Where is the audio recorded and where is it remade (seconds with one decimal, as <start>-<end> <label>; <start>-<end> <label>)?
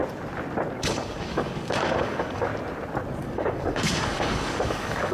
0.0-0.8 recorded; 0.8-2.5 remade; 2.5-3.2 recorded; 3.2-5.1 remade